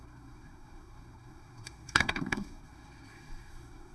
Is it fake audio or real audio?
fake